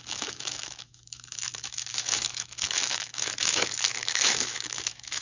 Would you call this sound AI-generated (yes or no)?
yes